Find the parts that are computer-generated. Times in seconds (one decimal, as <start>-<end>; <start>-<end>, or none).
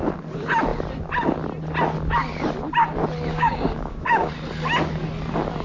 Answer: 3.3-4.3